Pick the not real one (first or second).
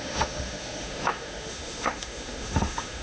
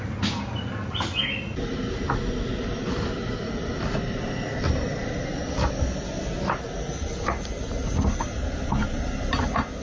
first